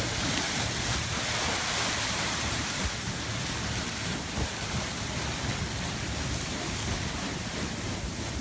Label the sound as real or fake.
real